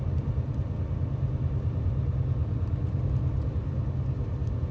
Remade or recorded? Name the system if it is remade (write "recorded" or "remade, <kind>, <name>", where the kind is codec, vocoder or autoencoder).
recorded